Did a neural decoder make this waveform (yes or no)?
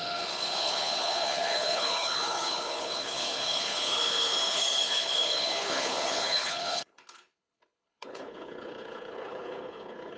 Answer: yes